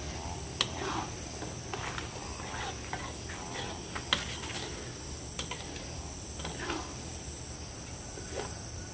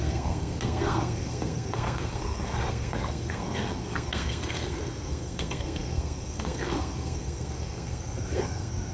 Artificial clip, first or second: second